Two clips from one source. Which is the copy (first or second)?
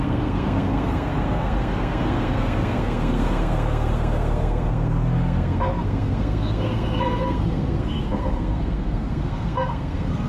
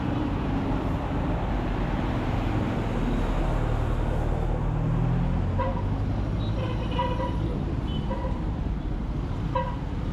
first